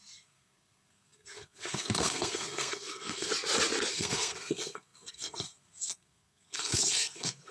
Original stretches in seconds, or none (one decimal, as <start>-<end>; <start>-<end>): 3.3-3.9